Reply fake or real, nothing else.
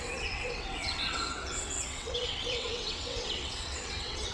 fake